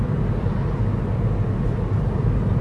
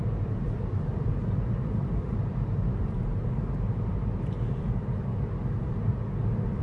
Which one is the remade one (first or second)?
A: second